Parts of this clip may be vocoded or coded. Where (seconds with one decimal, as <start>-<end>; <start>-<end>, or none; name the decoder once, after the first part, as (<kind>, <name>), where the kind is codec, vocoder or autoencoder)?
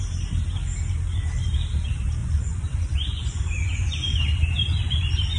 2.2-5.4 (vocoder, Vocos)